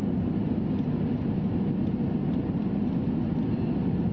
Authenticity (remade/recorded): recorded